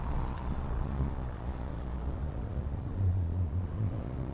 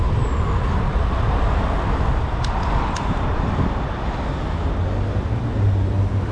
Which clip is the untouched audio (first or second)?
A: second